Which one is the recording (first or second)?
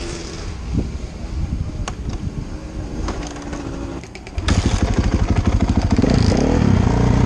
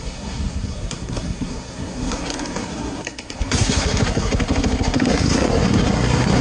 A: first